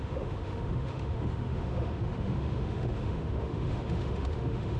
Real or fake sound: fake